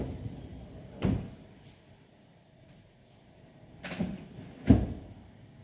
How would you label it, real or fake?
real